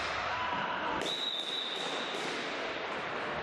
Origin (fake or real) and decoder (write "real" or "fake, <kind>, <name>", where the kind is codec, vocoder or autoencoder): real